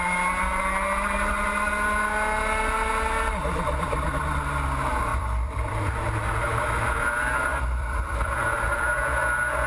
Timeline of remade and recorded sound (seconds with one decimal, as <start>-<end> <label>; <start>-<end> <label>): 0.0-5.1 recorded; 5.1-5.9 remade; 5.9-7.5 recorded; 7.5-8.4 remade; 8.4-9.7 recorded